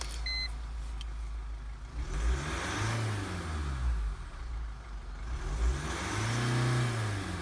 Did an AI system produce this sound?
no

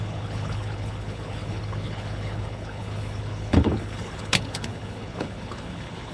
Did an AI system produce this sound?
yes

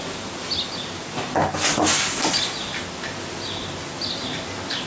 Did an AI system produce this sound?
no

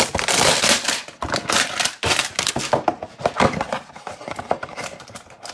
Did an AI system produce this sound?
no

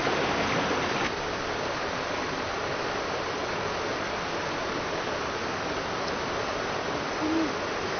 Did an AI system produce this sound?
no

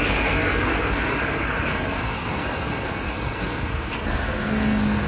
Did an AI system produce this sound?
yes